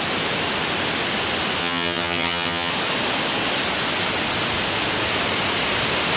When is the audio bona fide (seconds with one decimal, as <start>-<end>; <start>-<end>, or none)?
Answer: 0.0-1.6; 2.7-6.2